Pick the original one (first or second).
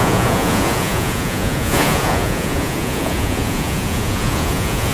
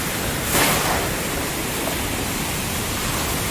second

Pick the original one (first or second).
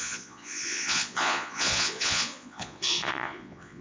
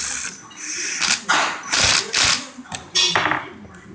second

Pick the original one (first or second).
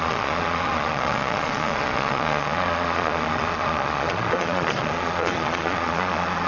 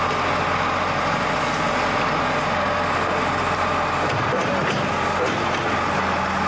second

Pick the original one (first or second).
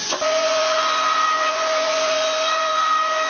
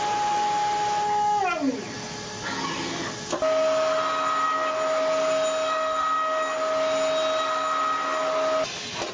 second